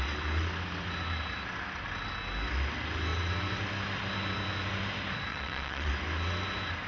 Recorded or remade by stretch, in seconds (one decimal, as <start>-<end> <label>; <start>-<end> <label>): 0.0-5.3 recorded; 5.3-5.9 remade; 5.9-6.9 recorded